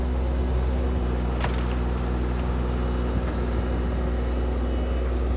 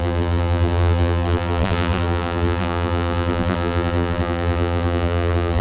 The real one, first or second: first